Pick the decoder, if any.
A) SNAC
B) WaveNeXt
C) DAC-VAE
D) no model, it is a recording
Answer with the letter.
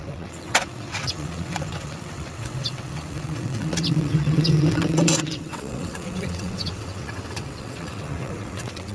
B